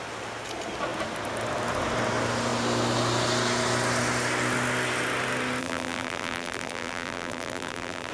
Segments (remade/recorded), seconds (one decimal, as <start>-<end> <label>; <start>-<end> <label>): 0.0-5.6 recorded; 5.6-8.1 remade